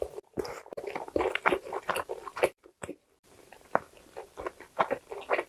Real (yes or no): no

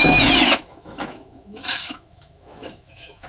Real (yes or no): no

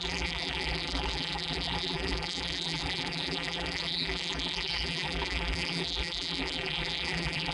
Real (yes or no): no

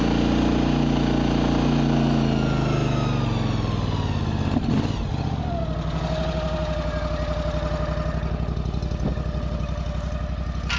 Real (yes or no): yes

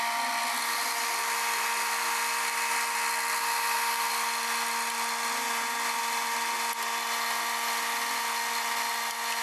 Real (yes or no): yes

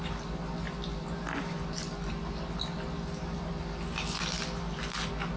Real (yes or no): yes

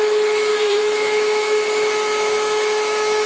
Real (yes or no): no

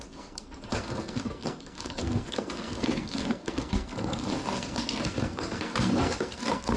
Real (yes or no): no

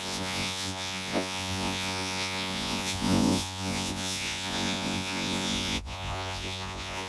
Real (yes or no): no